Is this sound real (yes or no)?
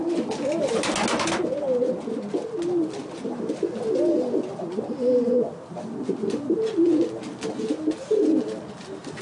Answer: yes